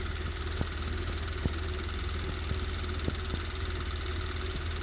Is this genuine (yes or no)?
yes